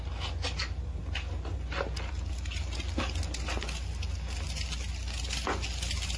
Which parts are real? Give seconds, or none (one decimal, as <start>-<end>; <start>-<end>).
0.0-6.2